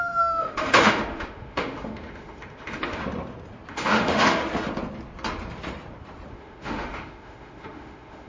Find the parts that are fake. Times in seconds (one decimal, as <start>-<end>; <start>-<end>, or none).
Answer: 0.0-3.0; 3.7-4.4; 6.3-8.3